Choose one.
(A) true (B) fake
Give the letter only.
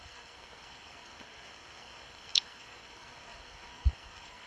B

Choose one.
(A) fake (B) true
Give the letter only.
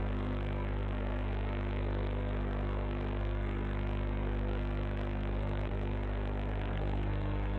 A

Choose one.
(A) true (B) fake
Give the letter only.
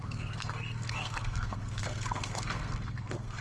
B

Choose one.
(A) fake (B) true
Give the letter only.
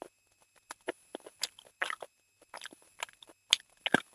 B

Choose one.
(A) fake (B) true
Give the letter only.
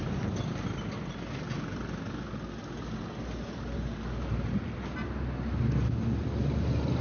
B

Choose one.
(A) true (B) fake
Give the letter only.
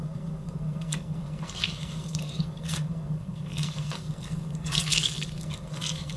B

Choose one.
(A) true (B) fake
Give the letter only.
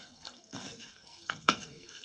B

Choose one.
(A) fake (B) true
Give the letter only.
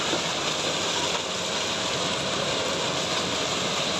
B